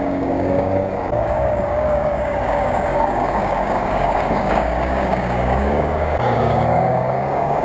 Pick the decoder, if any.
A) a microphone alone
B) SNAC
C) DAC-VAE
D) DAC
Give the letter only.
D